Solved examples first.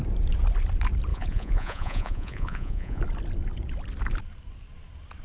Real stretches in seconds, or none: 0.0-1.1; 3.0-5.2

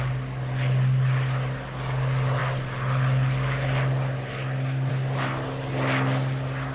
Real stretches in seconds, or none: 0.0-6.7

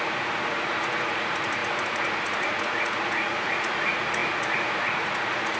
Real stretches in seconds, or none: none

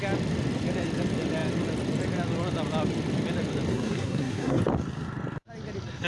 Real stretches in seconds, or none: 0.0-3.7; 4.6-6.1

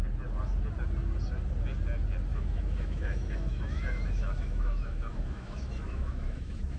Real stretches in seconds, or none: 0.0-2.3

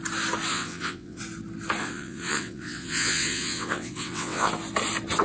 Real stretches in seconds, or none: 0.0-0.5; 1.2-1.8; 4.5-5.2

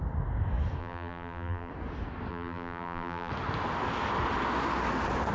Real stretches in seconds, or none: 0.0-0.8; 1.7-2.3; 3.3-5.3